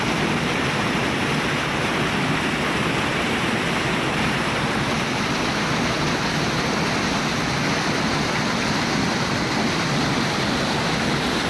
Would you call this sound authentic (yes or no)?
yes